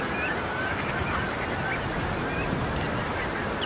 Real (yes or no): yes